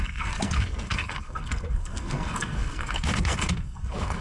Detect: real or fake fake